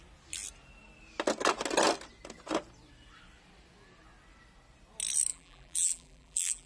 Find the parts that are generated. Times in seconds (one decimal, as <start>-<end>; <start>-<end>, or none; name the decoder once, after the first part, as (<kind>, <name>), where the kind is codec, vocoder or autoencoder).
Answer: 5.3-6.7 (vocoder, BigVGAN v2)